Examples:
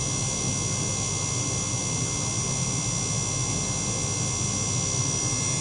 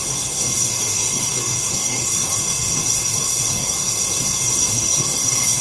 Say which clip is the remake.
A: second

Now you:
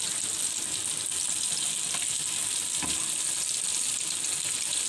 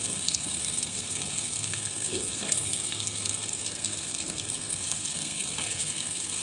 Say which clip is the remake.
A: second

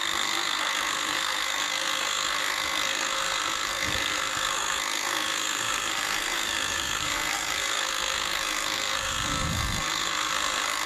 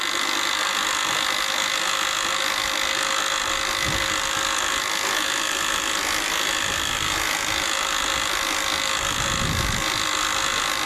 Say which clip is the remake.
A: first